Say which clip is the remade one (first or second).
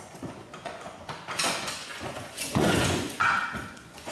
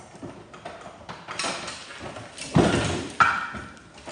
first